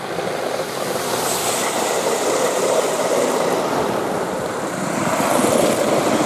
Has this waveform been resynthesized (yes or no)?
no